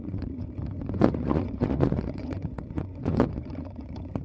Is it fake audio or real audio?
fake